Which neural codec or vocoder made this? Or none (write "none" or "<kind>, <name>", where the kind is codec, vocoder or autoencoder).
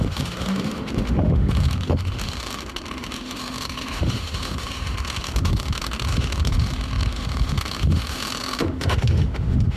autoencoder, DAC-VAE